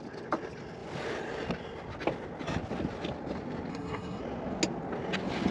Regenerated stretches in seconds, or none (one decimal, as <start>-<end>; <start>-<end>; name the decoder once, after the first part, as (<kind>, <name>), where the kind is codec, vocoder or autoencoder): 3.7-4.2 (codec, SNAC)